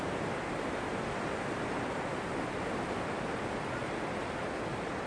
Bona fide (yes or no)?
yes